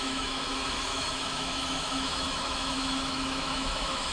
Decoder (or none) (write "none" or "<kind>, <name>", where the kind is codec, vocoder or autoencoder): autoencoder, DAC-VAE